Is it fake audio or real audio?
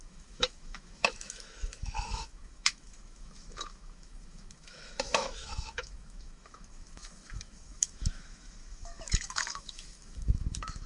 fake